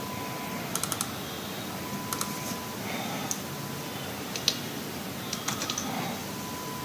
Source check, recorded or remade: recorded